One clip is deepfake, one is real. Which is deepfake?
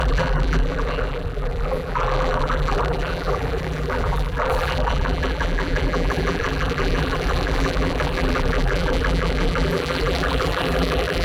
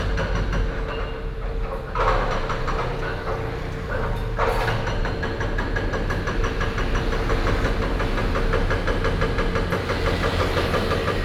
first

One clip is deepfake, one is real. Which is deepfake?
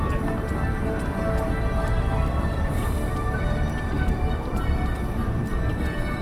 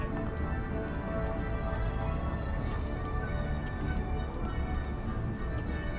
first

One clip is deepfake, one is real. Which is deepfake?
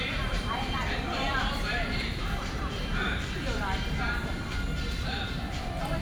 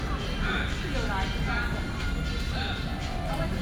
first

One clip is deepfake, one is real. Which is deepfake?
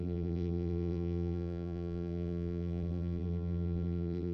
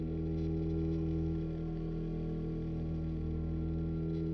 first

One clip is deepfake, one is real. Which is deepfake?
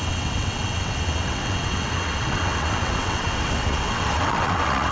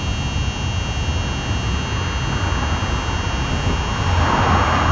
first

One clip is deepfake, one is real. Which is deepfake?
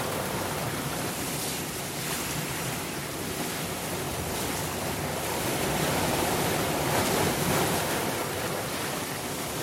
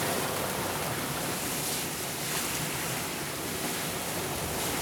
first